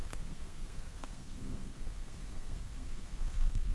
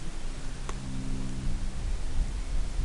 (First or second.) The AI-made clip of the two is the first